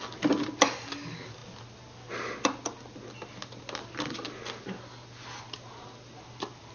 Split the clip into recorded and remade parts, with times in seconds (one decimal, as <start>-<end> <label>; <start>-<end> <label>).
0.0-6.7 recorded